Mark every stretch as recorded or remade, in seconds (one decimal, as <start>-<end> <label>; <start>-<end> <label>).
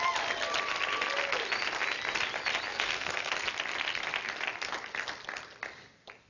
0.0-2.7 recorded; 2.7-3.3 remade; 3.3-6.3 recorded